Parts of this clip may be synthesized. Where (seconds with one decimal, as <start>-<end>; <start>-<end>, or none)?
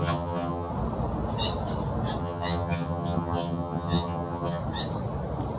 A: 0.0-0.7; 2.2-4.6